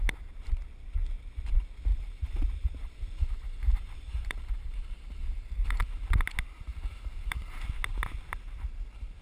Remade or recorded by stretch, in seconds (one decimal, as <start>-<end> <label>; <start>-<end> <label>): 0.0-1.9 recorded; 1.9-5.9 remade; 5.9-6.7 recorded; 6.7-7.6 remade; 7.6-9.2 recorded